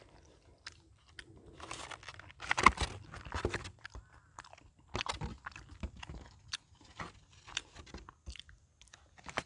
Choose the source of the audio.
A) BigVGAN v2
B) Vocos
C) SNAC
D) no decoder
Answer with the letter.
D